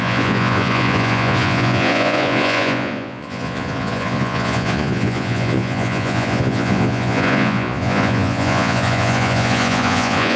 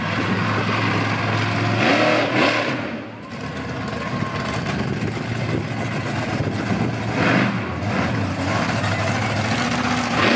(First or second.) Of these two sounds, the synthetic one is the first